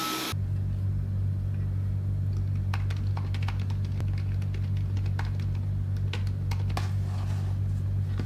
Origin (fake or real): real